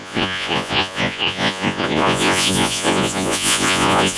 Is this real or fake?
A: fake